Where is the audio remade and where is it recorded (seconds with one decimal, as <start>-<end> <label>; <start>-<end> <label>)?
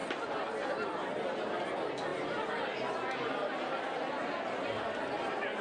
0.0-5.6 recorded